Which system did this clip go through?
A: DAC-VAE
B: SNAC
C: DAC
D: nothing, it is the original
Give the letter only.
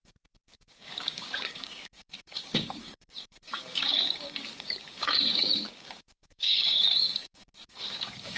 C